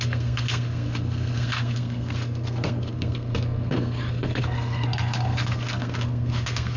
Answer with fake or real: fake